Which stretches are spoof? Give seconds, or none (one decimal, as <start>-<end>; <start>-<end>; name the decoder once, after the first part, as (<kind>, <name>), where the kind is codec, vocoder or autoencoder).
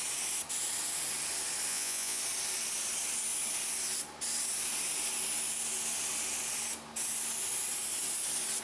1.7-2.2 (vocoder, Vocos)